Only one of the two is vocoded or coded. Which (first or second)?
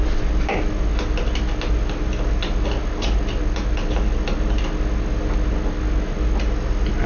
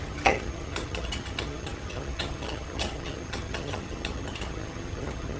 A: second